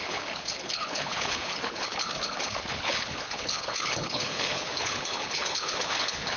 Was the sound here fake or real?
fake